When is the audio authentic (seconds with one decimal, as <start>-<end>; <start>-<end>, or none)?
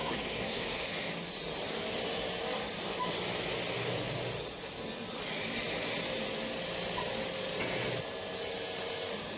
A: 0.9-9.4